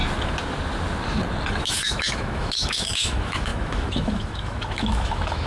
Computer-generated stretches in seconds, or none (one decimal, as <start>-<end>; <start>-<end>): 1.5-5.5